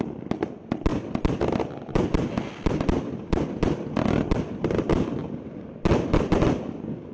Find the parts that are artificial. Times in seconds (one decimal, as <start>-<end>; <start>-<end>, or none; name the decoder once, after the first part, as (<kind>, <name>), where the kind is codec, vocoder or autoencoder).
none